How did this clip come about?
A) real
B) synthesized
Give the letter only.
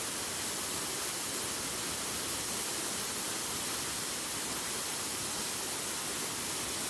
B